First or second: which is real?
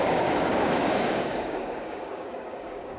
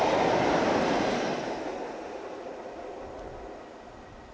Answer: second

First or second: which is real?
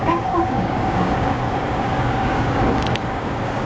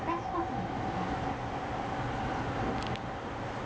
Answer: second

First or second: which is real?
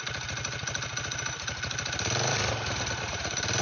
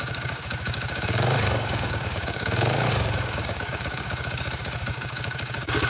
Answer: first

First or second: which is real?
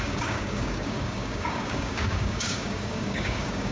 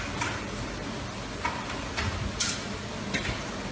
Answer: second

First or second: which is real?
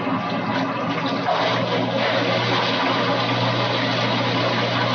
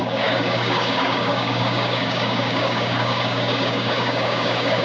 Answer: first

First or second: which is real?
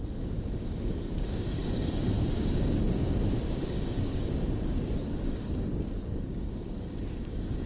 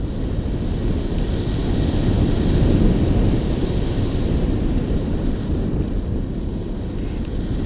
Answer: second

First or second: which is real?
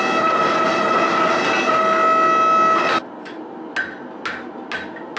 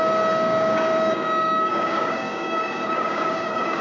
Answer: first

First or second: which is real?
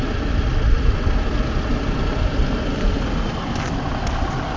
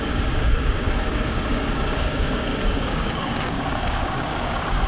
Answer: first